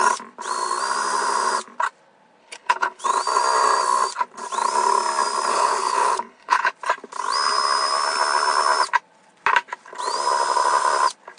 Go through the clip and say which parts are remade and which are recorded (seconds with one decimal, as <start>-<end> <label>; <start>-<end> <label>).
0.0-2.4 recorded; 2.4-3.0 remade; 3.0-5.5 recorded; 5.5-6.7 remade; 6.7-11.4 recorded